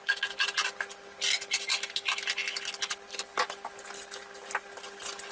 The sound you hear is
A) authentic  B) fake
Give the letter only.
A